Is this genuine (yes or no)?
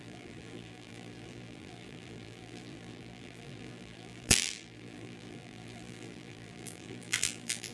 no